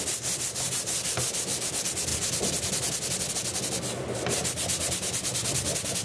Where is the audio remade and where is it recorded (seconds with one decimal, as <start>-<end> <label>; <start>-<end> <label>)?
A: 0.0-6.0 recorded